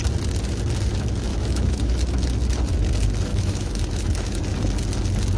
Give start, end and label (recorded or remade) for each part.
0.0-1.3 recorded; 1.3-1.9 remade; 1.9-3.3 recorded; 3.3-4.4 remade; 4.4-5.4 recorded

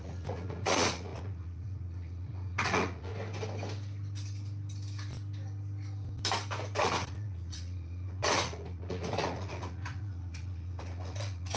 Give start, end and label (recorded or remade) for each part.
0.0-3.1 remade; 3.1-6.8 recorded; 6.8-11.6 remade

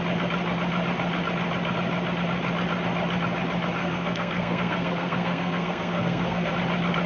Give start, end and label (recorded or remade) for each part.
0.0-3.8 recorded; 3.8-6.5 remade; 6.5-7.1 recorded

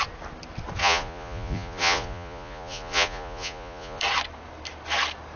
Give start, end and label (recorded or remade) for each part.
0.0-0.8 recorded; 0.8-4.0 remade; 4.0-5.4 recorded

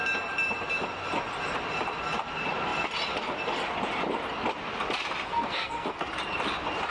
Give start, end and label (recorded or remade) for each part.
0.0-5.3 recorded; 5.3-6.0 remade; 6.0-6.9 recorded

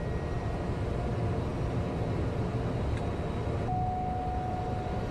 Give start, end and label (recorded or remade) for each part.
0.0-5.1 recorded